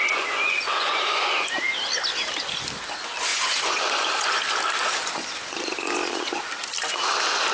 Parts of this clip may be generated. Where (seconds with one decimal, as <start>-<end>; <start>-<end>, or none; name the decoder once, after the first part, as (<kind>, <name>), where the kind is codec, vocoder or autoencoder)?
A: 0.0-1.5 (vocoder, Vocos); 3.3-4.4; 5.0-6.4

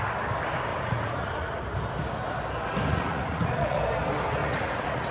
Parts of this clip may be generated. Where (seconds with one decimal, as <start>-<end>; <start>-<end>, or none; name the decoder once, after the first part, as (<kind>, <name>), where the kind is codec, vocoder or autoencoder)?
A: 0.7-1.6 (vocoder, Vocos); 2.9-3.8; 4.4-5.1